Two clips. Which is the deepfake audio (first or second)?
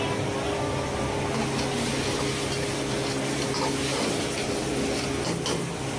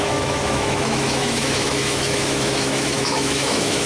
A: second